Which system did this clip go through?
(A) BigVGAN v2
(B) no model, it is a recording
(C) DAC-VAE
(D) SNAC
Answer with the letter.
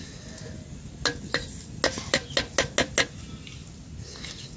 B